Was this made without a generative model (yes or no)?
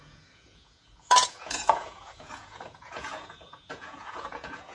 no